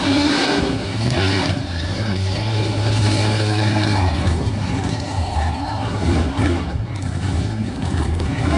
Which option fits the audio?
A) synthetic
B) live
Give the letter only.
A